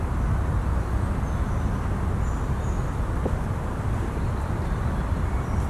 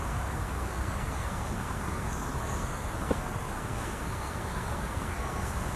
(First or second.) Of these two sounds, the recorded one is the first